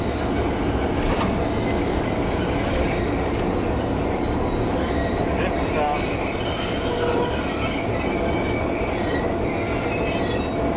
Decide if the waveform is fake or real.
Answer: real